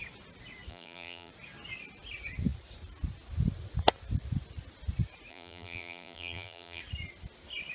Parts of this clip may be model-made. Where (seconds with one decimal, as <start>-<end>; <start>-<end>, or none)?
0.7-1.3; 5.3-6.8